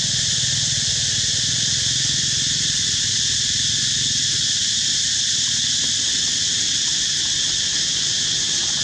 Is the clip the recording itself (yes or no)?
no